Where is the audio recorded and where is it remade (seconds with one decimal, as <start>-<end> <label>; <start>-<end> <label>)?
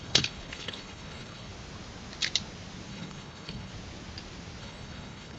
0.0-1.5 remade; 1.5-2.9 recorded; 2.9-3.7 remade; 3.7-4.6 recorded; 4.6-5.4 remade